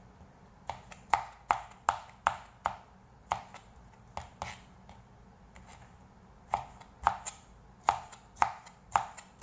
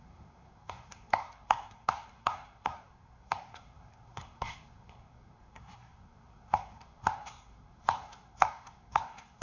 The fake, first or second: second